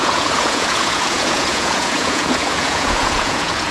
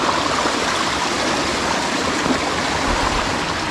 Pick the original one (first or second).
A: second